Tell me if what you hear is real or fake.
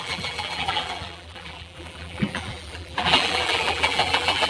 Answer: fake